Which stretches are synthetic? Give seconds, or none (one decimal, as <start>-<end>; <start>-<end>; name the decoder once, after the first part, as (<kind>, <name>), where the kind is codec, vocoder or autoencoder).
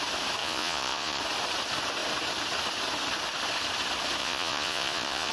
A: 0.4-1.2 (vocoder, Vocos); 4.2-5.3